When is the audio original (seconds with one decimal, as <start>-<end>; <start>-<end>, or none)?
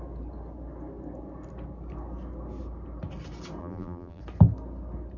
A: 0.0-3.6; 4.2-5.2